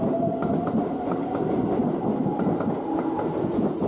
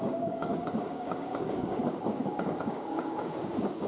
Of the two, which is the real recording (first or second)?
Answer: first